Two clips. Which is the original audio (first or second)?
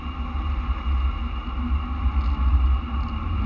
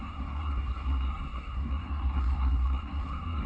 first